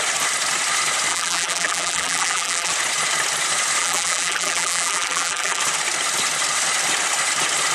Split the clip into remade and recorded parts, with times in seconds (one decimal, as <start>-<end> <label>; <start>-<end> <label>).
0.0-1.1 recorded; 1.1-2.7 remade; 2.7-3.8 recorded; 3.8-5.6 remade; 5.6-7.7 recorded